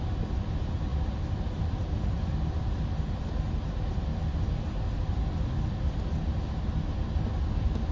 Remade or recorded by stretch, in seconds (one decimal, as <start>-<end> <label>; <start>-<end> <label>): 0.0-7.9 recorded